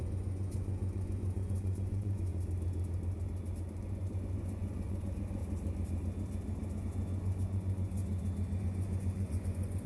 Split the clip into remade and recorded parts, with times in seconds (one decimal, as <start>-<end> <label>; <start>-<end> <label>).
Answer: 0.0-2.3 remade; 2.3-3.8 recorded; 3.8-5.4 remade; 5.4-6.8 recorded; 6.8-8.0 remade; 8.0-8.6 recorded; 8.6-9.9 remade